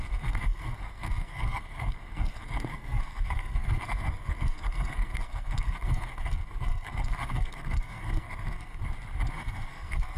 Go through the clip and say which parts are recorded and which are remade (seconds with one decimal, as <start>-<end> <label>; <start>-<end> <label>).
0.0-8.8 remade; 8.8-9.3 recorded; 9.3-10.2 remade